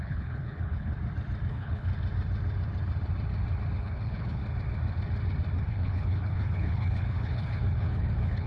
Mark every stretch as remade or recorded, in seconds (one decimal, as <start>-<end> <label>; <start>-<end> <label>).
0.0-0.9 remade; 0.9-1.5 recorded; 1.5-1.9 remade; 1.9-3.8 recorded; 3.8-4.4 remade; 4.4-5.7 recorded; 5.7-8.5 remade